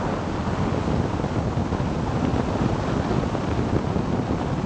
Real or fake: real